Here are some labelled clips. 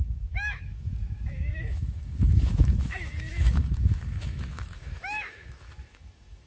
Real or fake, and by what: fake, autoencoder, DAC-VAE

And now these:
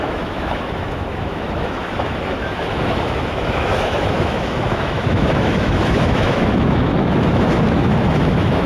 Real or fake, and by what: fake, autoencoder, DAC-VAE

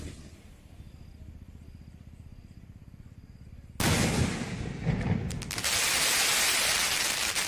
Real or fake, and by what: real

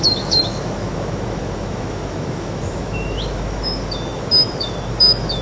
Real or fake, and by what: fake, autoencoder, DAC-VAE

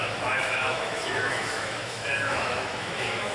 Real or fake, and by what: fake, autoencoder, DAC-VAE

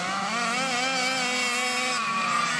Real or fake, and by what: real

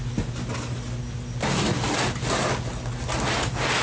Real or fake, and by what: real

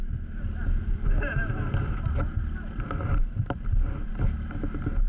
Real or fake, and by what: real